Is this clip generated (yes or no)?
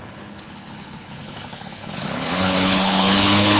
yes